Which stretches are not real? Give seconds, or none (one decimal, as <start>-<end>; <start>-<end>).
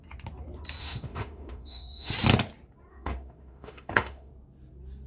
0.8-2.1; 2.9-4.3